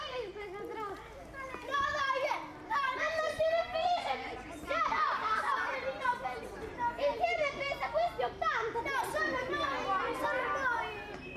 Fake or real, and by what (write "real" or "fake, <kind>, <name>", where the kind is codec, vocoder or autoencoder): fake, vocoder, BigVGAN v2